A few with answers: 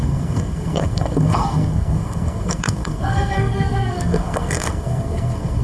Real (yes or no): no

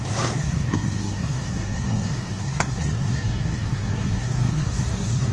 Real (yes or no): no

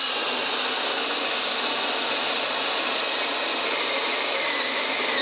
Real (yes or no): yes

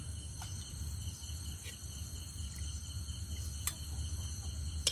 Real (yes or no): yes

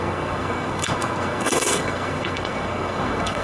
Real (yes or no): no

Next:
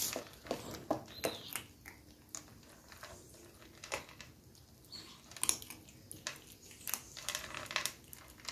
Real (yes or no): yes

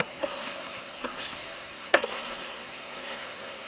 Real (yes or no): no